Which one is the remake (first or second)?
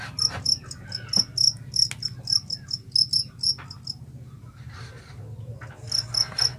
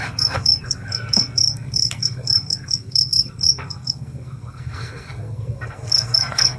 second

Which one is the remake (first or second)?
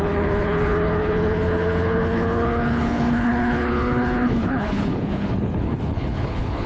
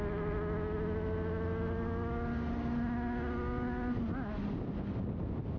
first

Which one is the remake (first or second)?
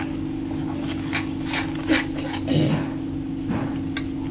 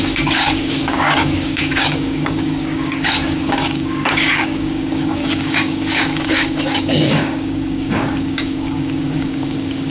second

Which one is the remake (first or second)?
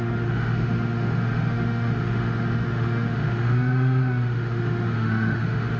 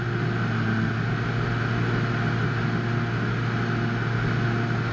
first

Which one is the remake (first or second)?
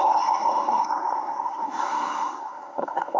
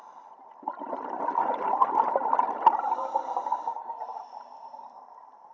first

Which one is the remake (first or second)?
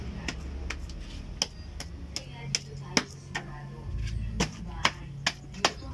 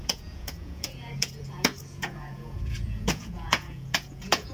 second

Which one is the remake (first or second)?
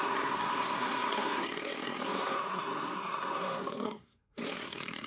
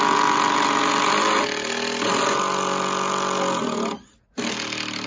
first